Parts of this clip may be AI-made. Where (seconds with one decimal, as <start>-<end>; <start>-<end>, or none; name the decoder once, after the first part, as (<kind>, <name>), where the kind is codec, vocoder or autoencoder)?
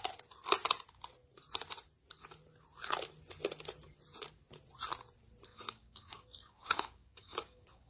5.5-7.9 (codec, DAC)